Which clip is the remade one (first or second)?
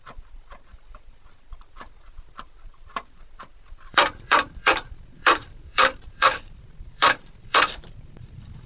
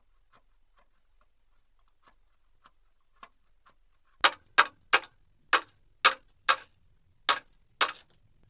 first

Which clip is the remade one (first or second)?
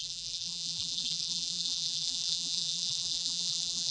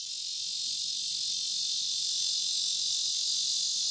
first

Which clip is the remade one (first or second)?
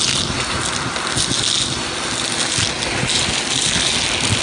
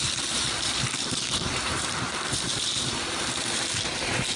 second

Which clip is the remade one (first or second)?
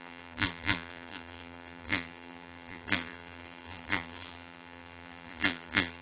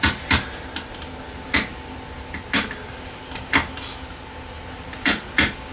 first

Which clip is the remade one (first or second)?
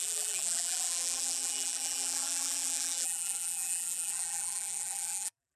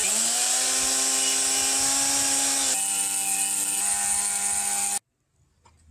first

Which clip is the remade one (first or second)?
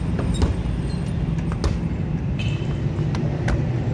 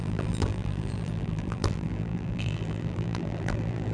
second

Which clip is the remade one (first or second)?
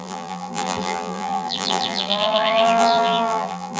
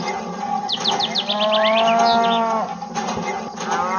first